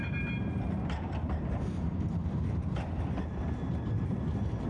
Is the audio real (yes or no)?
no